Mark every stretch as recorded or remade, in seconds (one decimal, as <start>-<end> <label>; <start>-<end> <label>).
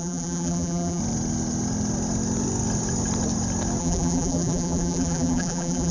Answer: 0.0-1.0 remade; 1.0-3.8 recorded; 3.8-5.9 remade